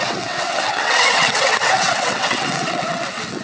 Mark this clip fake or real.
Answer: fake